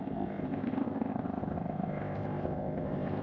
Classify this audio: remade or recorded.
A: remade